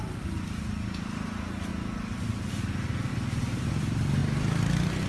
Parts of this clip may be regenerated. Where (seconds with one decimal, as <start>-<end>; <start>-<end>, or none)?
0.0-1.7; 2.5-4.2